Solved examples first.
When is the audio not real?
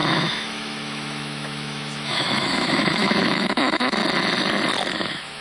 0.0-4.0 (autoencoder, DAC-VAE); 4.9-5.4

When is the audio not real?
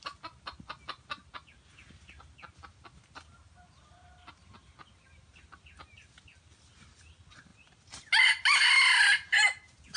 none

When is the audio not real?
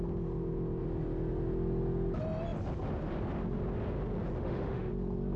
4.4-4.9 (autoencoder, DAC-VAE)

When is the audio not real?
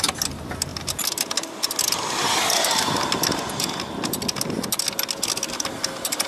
none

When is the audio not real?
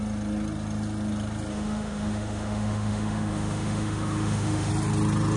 1.5-4.7 (autoencoder, DAC-VAE)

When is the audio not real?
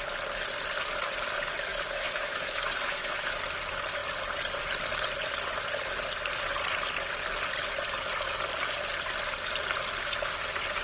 1.7-3.4 (autoencoder, DAC-VAE)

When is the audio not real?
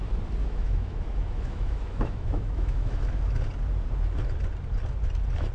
0.4-3.0 (autoencoder, DAC-VAE)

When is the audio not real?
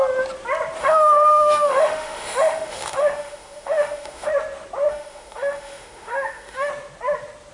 0.8-4.3 (autoencoder, DAC-VAE); 4.9-6.7